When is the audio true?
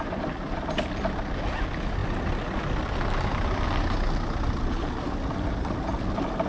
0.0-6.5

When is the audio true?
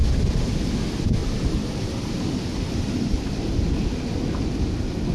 0.7-1.2; 2.4-5.1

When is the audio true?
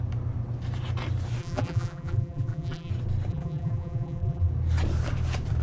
0.0-1.4; 2.9-3.3; 4.5-5.6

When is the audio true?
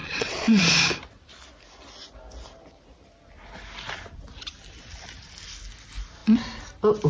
0.6-7.1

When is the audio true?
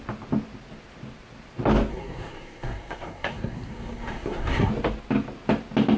0.0-1.9; 4.7-6.0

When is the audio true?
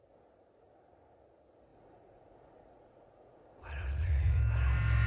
0.0-1.7; 4.4-5.1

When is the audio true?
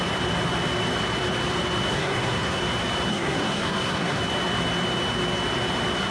0.0-1.9; 2.6-3.1; 4.2-6.1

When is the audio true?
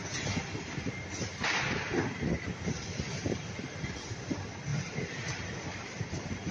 0.0-3.9